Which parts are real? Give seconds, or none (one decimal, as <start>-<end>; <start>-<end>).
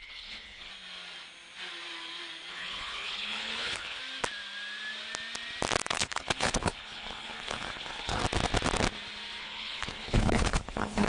0.7-2.5; 4.0-5.9; 8.2-9.4